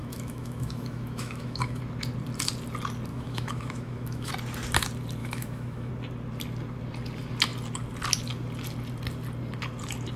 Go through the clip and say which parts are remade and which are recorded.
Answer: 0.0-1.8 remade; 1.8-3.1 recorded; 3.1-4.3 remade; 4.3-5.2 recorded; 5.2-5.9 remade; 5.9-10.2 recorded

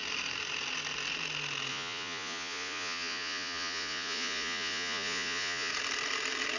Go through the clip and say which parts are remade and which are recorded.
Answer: 0.0-1.7 recorded; 1.7-5.7 remade; 5.7-6.6 recorded

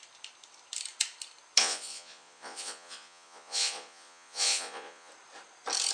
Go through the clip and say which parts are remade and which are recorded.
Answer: 0.0-1.6 recorded; 1.6-5.1 remade; 5.1-5.9 recorded

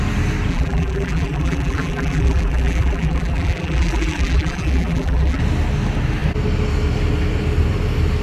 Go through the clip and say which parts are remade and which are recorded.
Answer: 0.0-0.5 recorded; 0.5-5.4 remade; 5.4-8.2 recorded

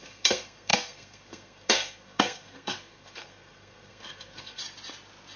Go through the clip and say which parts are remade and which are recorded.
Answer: 0.0-4.6 remade; 4.6-5.4 recorded

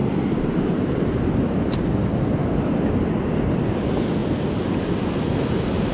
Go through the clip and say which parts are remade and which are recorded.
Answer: 0.0-1.0 remade; 1.0-5.9 recorded

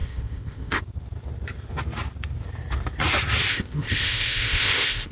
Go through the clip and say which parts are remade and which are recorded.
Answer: 0.0-0.8 remade; 0.8-3.5 recorded; 3.5-5.1 remade